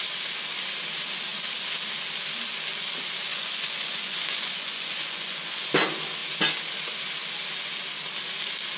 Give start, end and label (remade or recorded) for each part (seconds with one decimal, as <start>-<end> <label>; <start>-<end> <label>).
0.0-3.3 recorded; 3.3-5.5 remade; 5.5-8.8 recorded